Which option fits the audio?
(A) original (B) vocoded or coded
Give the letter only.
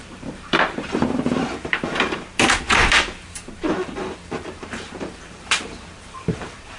B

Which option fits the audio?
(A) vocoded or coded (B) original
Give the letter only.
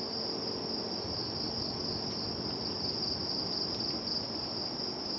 B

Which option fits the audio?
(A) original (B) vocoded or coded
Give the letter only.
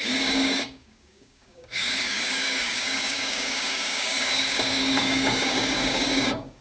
B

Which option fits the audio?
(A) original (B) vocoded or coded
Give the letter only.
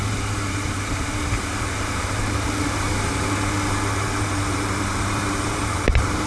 B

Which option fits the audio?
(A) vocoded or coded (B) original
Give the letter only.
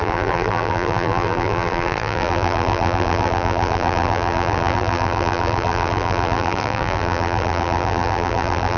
A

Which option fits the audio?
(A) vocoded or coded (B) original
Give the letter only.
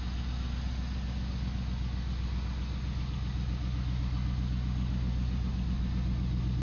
B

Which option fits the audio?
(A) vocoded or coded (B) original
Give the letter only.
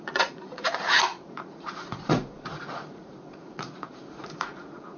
A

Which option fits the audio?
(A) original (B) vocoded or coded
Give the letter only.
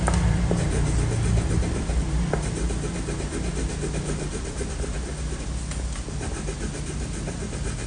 A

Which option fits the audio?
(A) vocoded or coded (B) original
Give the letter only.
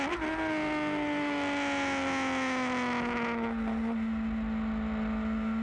B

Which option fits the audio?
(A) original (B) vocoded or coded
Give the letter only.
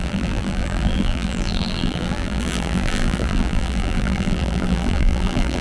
B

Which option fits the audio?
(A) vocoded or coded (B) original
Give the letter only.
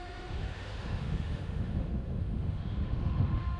A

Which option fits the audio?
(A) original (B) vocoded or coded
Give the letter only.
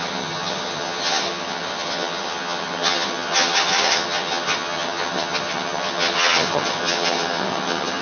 B